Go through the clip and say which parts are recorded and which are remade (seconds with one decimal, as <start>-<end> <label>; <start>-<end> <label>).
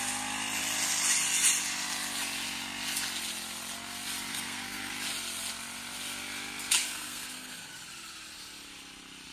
0.0-4.3 recorded; 4.3-4.9 remade; 4.9-6.8 recorded; 6.8-7.7 remade; 7.7-9.3 recorded